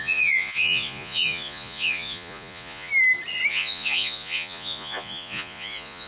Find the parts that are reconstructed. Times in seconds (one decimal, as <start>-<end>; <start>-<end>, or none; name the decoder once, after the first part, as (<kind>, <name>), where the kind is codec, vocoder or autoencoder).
0.0-2.9 (vocoder, Vocos); 3.5-6.1